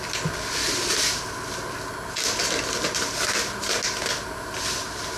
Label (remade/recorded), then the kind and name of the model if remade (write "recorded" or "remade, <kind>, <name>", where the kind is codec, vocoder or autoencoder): recorded